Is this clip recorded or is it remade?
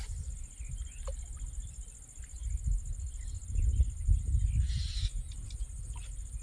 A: recorded